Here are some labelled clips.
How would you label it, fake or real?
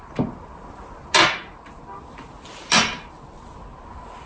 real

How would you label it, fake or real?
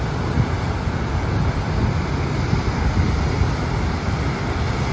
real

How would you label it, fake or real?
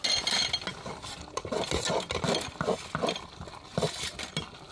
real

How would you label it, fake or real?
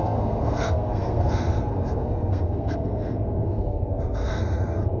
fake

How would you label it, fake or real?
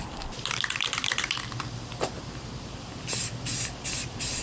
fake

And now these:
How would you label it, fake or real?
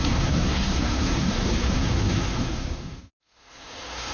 fake